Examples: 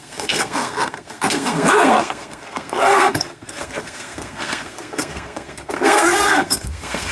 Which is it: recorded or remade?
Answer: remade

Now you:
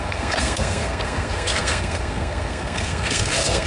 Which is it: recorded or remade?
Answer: remade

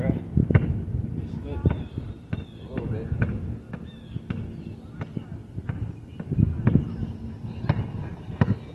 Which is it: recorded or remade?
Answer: recorded